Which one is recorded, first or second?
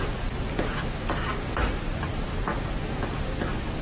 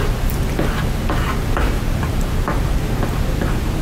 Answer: second